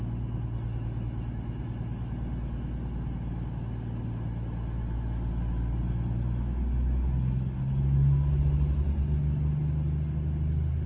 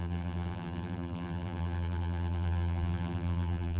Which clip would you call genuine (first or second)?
first